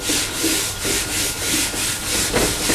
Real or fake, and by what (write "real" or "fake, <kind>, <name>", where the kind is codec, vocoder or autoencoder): real